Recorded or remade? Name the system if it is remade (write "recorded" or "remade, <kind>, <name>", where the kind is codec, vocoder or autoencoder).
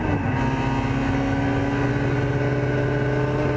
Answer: recorded